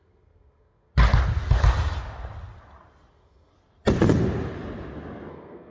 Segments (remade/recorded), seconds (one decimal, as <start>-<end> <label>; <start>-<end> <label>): 0.0-0.9 remade; 0.9-3.1 recorded; 3.1-3.5 remade; 3.5-5.3 recorded; 5.3-5.7 remade